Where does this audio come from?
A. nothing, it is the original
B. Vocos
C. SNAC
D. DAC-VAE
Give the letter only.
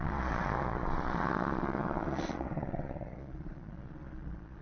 B